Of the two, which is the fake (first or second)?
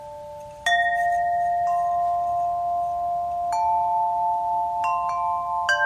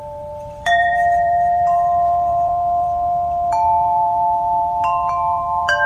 second